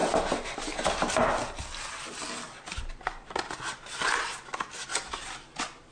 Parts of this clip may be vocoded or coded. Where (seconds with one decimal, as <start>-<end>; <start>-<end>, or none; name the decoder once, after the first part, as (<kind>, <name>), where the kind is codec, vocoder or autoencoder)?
none